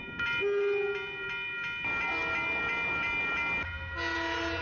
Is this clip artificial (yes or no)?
no